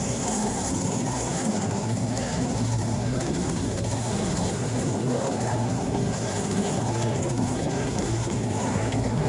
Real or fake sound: fake